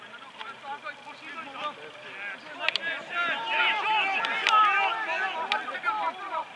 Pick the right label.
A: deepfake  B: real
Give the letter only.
B